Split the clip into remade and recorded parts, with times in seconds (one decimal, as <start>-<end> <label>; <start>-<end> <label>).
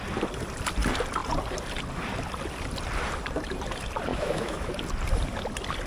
0.0-4.1 recorded; 4.1-4.7 remade; 4.7-5.9 recorded